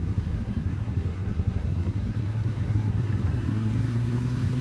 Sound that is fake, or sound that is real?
fake